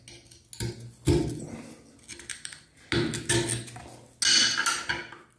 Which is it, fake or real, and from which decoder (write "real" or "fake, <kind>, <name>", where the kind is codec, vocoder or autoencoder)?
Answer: real